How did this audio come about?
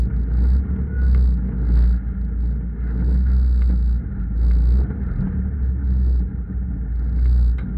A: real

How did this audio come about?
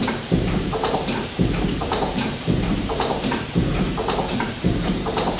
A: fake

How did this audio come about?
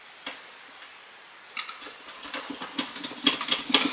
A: real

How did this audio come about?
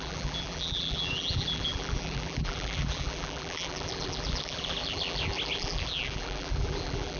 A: fake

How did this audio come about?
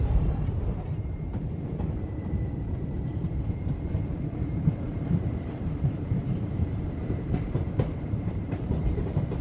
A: fake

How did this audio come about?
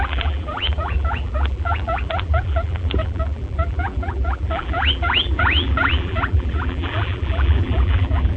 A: fake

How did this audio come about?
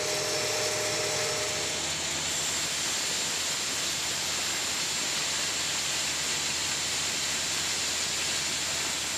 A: real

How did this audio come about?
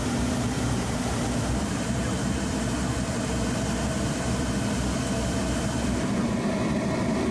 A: fake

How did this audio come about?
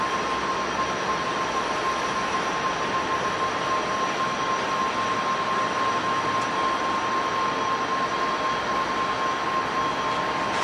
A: real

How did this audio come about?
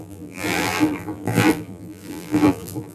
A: fake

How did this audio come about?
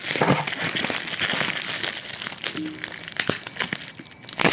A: real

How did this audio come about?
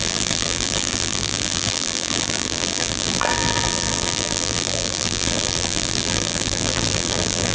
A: fake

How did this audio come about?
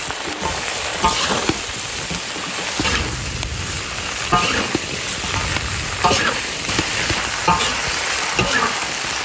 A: real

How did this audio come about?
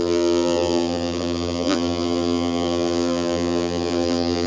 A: fake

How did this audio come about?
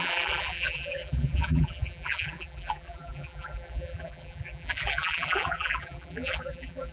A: fake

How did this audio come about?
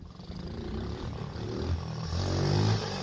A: real